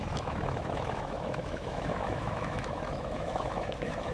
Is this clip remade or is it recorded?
remade